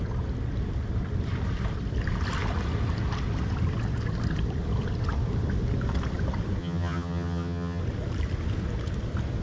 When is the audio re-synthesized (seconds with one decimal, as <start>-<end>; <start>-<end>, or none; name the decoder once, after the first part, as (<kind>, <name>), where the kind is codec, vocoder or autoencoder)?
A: 6.6-7.8 (vocoder, HiFi-GAN)